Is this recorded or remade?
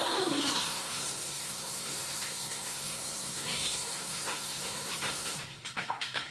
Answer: remade